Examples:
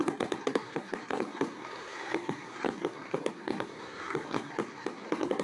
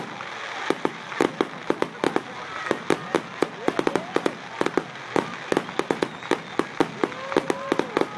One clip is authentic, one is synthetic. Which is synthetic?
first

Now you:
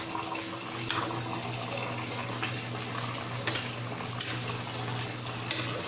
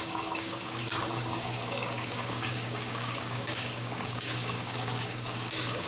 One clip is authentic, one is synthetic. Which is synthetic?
second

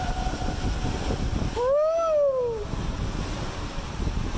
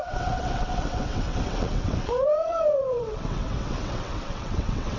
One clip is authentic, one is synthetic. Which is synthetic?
second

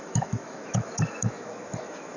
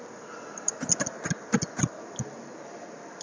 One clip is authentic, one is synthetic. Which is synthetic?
first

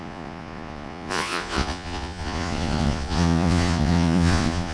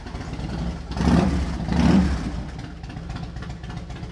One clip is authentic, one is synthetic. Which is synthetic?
first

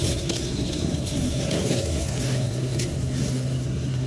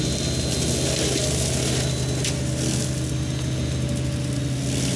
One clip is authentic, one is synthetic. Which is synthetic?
first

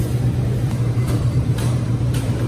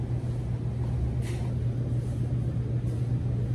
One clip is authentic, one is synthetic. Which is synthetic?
first